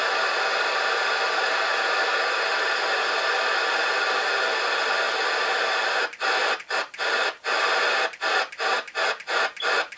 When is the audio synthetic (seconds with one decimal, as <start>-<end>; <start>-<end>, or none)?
none